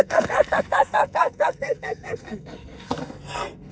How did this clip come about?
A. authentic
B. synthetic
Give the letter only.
B